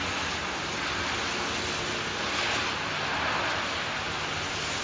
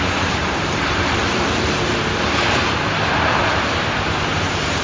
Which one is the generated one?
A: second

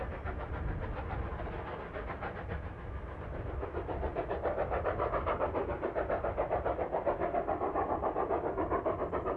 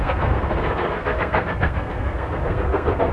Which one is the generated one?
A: second